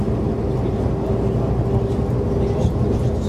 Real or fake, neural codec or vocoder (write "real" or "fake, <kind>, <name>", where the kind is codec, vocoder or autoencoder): real